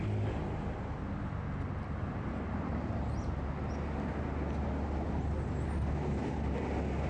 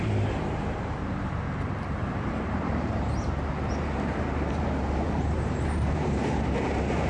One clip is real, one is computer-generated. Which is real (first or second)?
first